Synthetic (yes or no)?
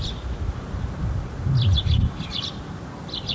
no